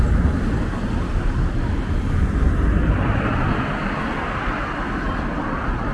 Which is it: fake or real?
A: real